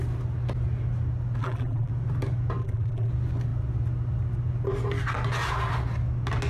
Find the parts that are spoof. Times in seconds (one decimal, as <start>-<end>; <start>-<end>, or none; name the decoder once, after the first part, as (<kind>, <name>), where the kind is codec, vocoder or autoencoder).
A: 1.4-1.9 (vocoder, BigVGAN v2); 2.6-3.1

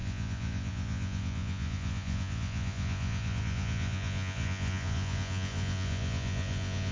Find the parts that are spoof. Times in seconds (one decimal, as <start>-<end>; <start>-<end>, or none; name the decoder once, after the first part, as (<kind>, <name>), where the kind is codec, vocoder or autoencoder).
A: 0.0-6.9 (vocoder, Vocos)

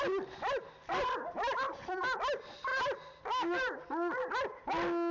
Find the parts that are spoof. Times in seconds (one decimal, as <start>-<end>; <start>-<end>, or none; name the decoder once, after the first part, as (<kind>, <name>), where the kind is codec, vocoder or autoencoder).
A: none